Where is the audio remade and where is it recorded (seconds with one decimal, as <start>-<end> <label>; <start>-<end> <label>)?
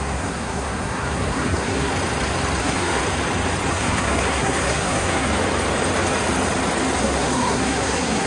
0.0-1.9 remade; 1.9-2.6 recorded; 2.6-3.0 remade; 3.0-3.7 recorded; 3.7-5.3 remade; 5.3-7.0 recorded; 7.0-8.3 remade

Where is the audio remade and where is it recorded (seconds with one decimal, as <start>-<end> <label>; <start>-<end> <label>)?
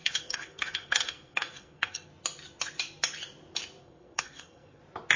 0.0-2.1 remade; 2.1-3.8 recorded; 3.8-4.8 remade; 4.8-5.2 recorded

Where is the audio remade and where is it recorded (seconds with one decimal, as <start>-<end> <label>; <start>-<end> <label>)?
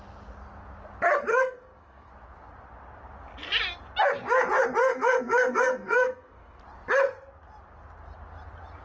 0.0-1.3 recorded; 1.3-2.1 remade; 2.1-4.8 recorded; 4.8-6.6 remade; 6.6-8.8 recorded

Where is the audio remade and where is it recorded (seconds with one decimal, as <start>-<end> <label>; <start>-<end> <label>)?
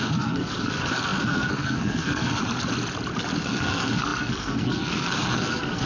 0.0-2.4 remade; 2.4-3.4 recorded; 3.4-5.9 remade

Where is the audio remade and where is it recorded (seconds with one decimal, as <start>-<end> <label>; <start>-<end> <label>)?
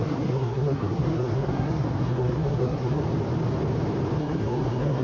0.0-3.0 remade; 3.0-4.2 recorded; 4.2-5.0 remade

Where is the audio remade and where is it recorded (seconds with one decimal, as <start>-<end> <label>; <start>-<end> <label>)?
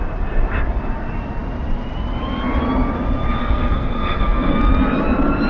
0.0-3.4 recorded; 3.4-4.5 remade; 4.5-5.5 recorded